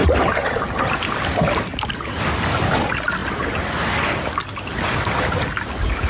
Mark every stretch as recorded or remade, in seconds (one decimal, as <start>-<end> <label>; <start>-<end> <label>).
0.0-1.5 remade; 1.5-6.1 recorded